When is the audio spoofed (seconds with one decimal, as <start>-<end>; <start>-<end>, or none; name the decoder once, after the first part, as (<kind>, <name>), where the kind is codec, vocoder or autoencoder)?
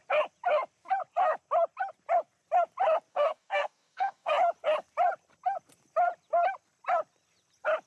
3.1-4.3 (codec, DAC)